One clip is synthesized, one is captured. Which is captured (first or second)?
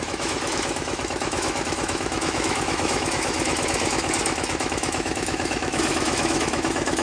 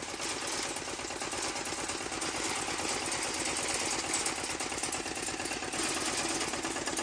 second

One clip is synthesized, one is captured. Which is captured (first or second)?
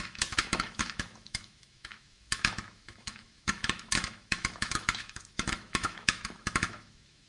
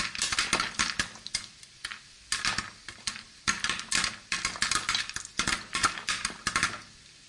second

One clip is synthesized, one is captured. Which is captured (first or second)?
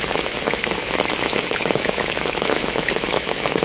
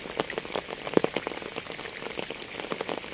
second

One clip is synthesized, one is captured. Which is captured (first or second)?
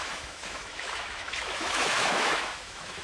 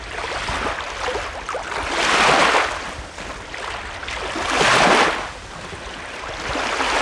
second